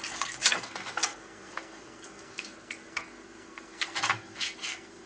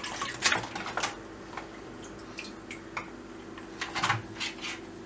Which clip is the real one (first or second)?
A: second